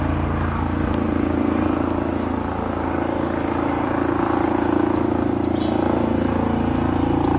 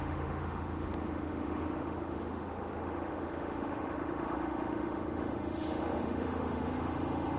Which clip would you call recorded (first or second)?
first